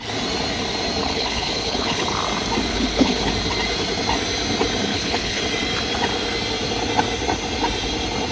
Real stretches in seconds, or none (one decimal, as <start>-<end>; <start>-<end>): 0.0-1.0; 2.2-2.7; 3.3-4.9; 5.4-8.3